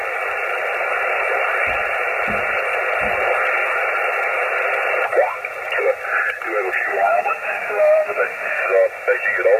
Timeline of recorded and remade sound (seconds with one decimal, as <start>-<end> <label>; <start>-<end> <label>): 0.0-6.9 recorded; 6.9-8.6 remade; 8.6-9.6 recorded